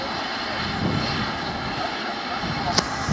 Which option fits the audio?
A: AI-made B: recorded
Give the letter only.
B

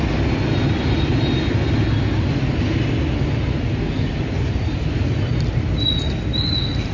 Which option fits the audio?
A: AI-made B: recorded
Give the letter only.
B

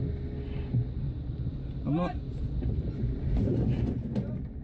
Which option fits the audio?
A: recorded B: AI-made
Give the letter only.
A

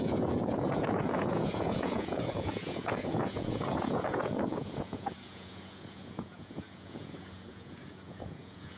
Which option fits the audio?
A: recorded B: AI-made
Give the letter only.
B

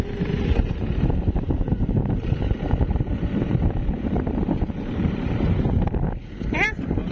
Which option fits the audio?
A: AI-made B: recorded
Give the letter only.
A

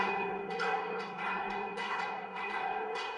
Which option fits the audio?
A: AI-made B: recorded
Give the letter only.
A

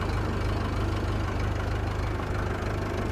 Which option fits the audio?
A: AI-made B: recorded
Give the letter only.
B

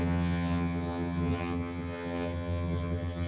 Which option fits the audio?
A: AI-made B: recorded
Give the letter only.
A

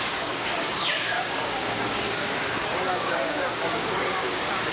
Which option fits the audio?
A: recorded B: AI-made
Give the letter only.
B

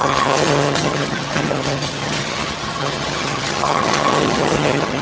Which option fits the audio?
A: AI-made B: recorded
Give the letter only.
A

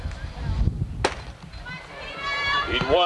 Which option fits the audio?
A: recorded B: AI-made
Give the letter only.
A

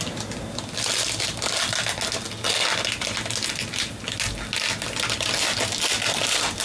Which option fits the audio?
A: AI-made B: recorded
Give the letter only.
B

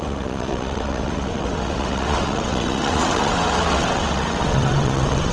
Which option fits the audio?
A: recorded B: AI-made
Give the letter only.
B